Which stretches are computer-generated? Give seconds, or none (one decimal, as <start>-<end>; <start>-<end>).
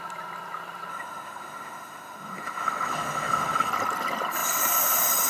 0.9-3.7